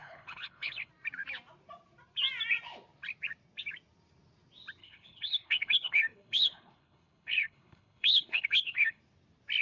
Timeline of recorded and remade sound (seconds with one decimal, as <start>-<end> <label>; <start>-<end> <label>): 0.0-0.9 remade; 0.9-4.8 recorded; 4.8-9.0 remade; 9.0-9.6 recorded